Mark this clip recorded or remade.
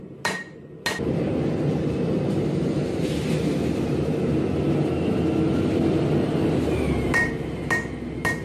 recorded